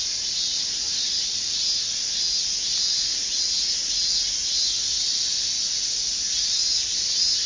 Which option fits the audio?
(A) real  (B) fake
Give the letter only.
A